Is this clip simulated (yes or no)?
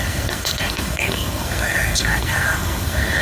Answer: yes